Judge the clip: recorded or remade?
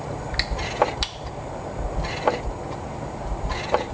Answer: recorded